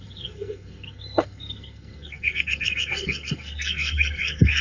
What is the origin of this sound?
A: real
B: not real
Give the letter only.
B